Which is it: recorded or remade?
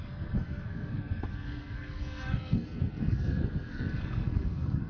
remade